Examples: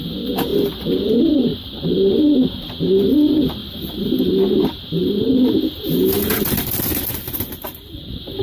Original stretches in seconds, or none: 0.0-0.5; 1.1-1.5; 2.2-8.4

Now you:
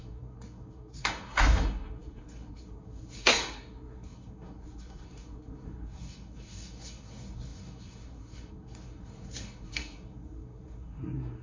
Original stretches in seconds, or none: none